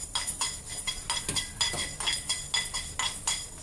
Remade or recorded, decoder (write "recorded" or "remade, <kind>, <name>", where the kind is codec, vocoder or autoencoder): recorded